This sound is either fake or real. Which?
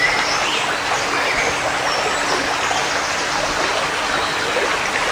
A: real